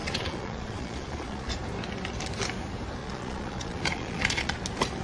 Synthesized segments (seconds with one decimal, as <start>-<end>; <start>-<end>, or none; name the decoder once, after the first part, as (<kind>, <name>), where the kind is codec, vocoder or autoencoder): 0.0-1.5 (vocoder, Vocos); 3.0-4.6